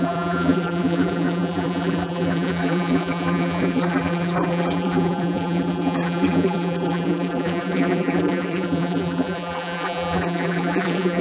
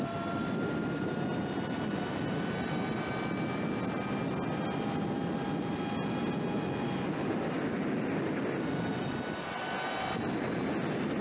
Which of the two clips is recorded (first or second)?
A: second